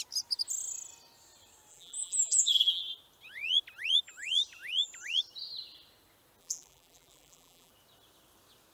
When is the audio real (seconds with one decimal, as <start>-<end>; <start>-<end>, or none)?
0.0-1.7; 2.8-6.4; 7.7-8.7